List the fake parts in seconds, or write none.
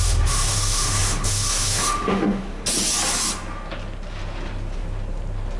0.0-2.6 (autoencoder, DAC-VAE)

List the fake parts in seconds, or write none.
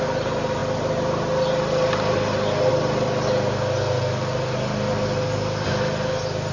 none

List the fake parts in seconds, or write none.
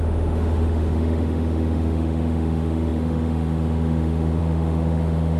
0.0-5.4 (autoencoder, DAC-VAE)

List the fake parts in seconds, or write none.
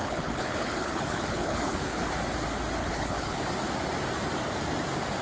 0.0-2.1 (codec, HILCodec); 2.8-3.4